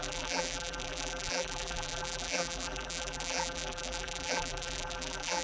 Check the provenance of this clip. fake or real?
fake